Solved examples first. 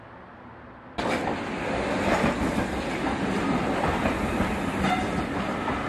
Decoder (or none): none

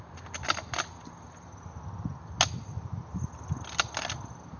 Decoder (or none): none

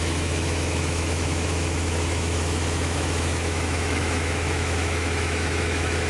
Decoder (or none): autoencoder, DAC-VAE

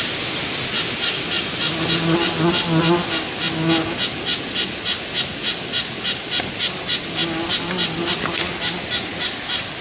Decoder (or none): none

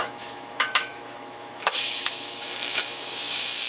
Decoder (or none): autoencoder, DAC-VAE